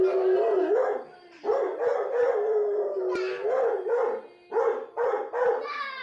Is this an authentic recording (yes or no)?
yes